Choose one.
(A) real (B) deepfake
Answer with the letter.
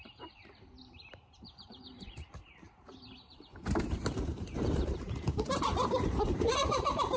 B